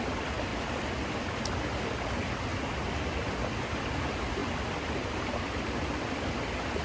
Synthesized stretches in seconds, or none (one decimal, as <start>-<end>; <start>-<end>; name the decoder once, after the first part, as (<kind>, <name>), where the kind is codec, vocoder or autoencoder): none